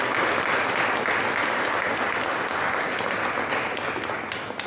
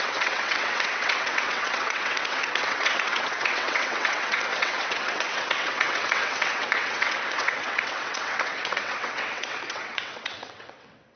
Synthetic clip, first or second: second